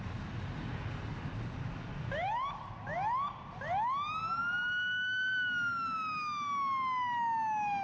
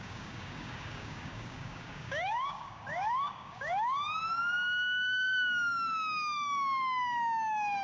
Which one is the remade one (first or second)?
second